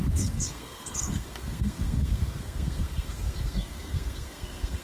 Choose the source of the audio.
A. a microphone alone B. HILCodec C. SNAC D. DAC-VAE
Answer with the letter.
C